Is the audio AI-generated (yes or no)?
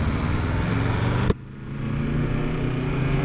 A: no